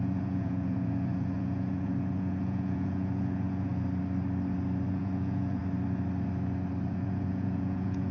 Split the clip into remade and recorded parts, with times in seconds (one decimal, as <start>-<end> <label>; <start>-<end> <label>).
0.0-3.7 remade; 3.7-4.9 recorded; 4.9-5.6 remade; 5.6-6.9 recorded; 6.9-8.1 remade